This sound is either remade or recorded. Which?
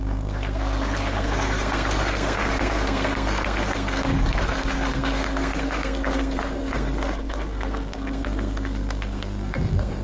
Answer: remade